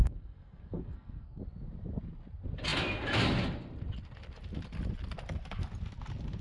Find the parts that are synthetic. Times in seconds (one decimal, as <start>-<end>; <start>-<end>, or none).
0.0-1.4